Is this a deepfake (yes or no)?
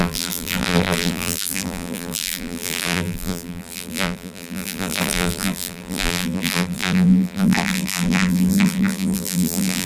yes